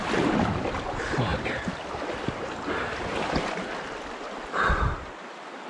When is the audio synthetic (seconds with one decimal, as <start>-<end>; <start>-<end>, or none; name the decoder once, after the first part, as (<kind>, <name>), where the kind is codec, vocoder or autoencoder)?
none